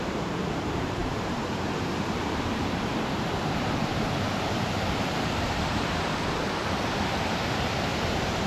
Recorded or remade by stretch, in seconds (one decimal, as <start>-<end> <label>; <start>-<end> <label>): 0.0-7.9 remade; 7.9-8.5 recorded